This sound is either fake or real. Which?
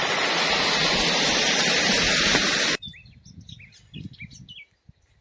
real